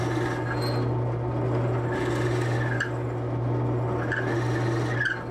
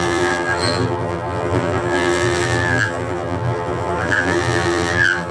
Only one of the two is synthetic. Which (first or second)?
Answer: second